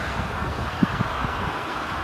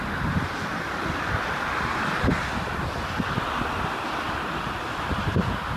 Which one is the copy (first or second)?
first